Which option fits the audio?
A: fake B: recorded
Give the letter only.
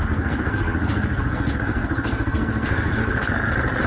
A